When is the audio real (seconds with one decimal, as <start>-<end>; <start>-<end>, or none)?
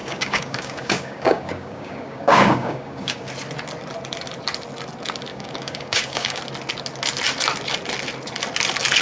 3.3-5.3; 6.4-9.0